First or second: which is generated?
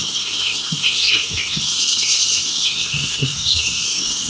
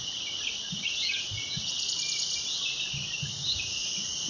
first